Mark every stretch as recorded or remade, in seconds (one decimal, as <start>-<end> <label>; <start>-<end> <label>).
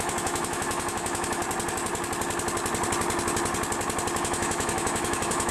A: 0.0-1.4 remade; 1.4-4.2 recorded; 4.2-5.5 remade